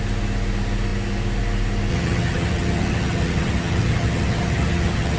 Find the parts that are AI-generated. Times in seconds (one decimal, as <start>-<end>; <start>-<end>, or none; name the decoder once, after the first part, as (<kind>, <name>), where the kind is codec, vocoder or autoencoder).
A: 1.9-5.2 (vocoder, HiFi-GAN)

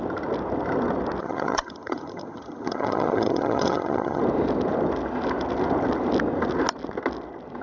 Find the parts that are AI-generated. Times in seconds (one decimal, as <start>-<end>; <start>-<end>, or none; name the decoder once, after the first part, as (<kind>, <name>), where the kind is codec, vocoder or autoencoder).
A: 1.2-4.2 (vocoder, HiFi-GAN)

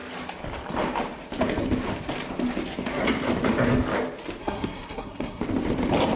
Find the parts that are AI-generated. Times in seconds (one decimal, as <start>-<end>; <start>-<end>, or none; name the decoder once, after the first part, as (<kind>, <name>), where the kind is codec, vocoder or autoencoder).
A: 4.4-5.4 (codec, SNAC)

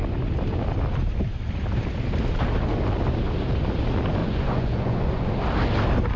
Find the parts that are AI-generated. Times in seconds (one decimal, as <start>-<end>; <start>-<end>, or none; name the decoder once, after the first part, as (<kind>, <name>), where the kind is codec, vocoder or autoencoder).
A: 4.2-5.3 (vocoder, Vocos)

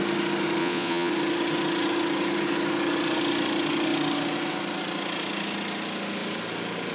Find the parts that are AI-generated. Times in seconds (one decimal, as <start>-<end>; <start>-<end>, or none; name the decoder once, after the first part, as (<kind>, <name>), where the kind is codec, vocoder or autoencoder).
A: 0.6-1.1 (vocoder, Vocos)

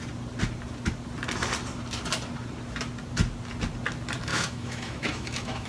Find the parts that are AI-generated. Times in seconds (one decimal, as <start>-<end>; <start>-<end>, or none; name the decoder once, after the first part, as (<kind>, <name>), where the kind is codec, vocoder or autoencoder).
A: 4.3-5.7 (autoencoder, DAC-VAE)